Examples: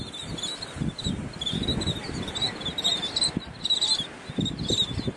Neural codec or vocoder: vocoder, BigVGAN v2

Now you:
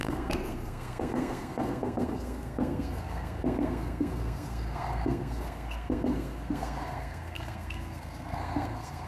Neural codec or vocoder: codec, SNAC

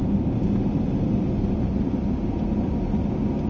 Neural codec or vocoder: none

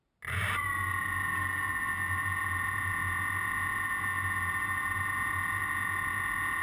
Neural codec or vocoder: none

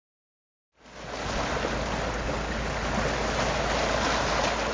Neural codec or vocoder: none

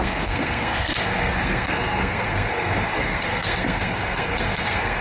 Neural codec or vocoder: codec, SNAC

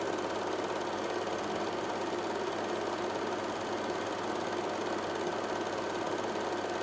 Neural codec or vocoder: none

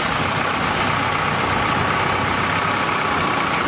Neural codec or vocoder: none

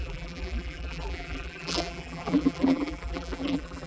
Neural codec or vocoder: vocoder, BigVGAN v2